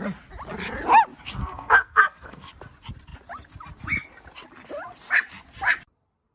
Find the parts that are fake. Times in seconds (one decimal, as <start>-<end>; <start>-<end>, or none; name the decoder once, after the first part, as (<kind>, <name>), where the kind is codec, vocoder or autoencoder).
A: 1.4-2.5 (codec, SNAC)